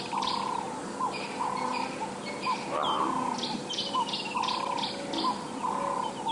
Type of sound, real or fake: real